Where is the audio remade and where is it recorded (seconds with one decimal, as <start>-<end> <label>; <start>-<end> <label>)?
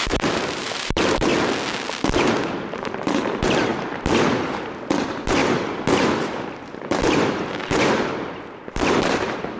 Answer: 0.0-1.3 remade; 1.3-2.6 recorded; 2.6-3.7 remade; 3.7-5.0 recorded; 5.0-5.4 remade; 5.4-6.7 recorded; 6.7-9.6 remade